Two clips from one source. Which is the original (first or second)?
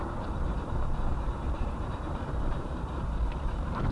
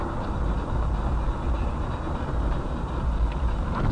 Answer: second